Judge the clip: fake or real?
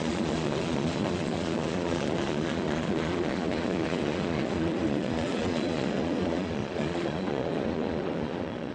fake